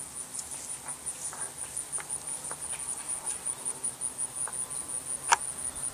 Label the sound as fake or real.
real